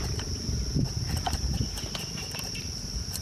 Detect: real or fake real